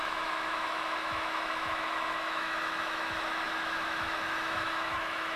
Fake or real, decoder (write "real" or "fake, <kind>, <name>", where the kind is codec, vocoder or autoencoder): fake, autoencoder, DAC-VAE